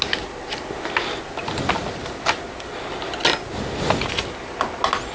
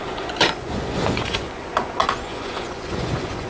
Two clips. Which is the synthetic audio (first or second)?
second